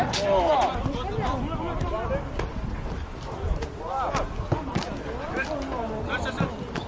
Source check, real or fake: real